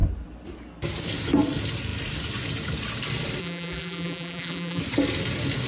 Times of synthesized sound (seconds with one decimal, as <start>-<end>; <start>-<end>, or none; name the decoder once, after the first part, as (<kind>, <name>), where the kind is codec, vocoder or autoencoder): 3.4-4.8 (vocoder, BigVGAN v2)